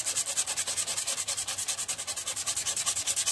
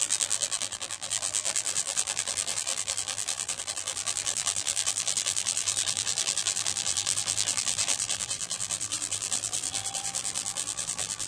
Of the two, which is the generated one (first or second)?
second